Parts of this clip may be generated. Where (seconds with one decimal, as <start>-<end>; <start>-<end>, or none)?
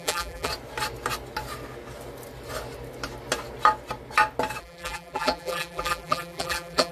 0.0-0.5; 4.6-6.9